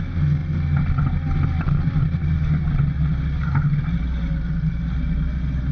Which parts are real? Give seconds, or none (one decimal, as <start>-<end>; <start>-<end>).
0.0-5.7